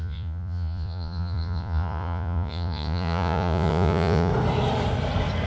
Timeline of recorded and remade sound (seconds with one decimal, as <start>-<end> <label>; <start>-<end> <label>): 0.0-4.3 remade; 4.3-5.5 recorded